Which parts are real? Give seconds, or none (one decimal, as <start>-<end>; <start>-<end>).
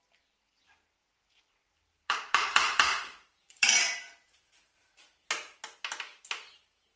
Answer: 0.0-1.0; 4.8-7.0